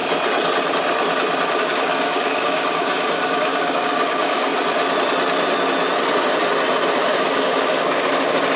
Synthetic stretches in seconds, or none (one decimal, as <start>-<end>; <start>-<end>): 1.6-4.5; 7.1-8.6